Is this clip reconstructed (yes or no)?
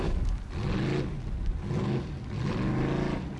no